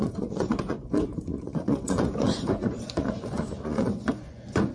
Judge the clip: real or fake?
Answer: fake